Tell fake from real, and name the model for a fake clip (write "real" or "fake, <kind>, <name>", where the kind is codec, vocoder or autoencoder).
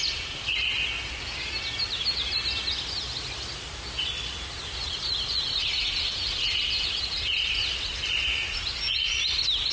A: real